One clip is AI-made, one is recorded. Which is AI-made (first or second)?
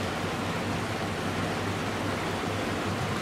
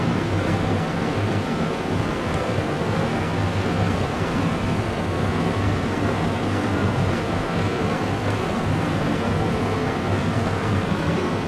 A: second